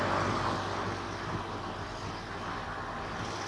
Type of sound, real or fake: real